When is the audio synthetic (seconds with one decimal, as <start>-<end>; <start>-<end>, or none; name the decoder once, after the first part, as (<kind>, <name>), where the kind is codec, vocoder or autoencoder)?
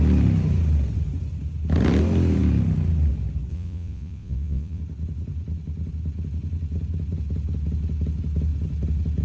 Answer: 3.5-4.8 (vocoder, Vocos)